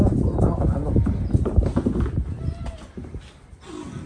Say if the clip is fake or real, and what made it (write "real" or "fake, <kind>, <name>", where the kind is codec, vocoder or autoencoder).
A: real